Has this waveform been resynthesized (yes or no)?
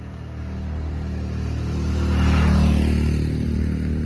no